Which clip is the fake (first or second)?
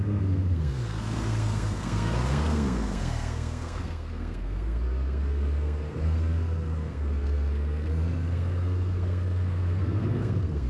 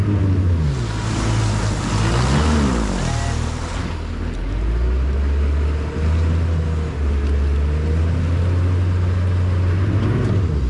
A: first